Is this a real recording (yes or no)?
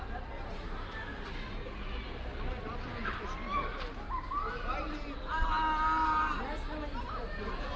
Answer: yes